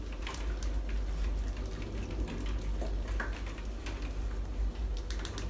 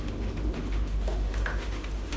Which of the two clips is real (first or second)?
first